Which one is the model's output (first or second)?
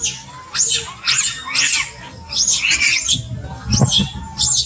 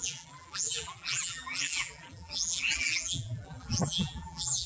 second